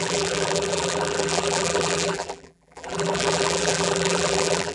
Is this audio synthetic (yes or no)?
yes